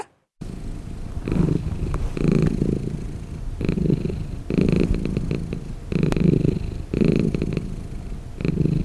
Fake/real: real